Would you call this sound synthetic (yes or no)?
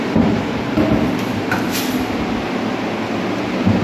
no